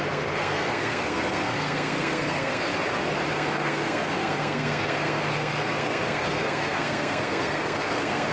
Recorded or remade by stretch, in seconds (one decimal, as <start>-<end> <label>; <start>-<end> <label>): 0.0-2.7 remade; 2.7-3.3 recorded; 3.3-8.3 remade